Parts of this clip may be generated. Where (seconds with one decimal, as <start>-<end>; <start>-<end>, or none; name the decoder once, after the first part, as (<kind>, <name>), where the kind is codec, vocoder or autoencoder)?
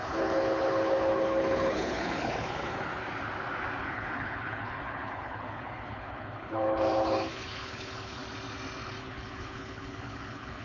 0.0-2.9 (codec, HILCodec); 3.8-8.2; 9.0-10.6